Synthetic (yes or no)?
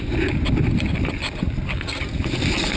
no